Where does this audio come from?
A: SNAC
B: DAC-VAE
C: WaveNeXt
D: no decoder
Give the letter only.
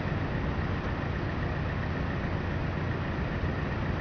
D